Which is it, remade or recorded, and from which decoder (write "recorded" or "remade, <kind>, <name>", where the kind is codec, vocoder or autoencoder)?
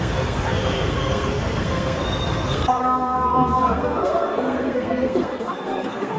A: remade, codec, SNAC